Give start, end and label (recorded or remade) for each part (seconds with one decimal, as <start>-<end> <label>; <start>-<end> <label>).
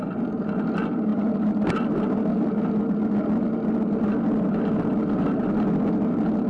0.0-6.5 recorded